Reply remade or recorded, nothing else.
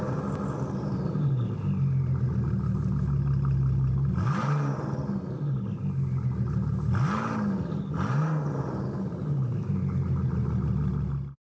recorded